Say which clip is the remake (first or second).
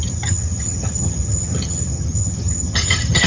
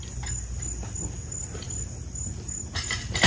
first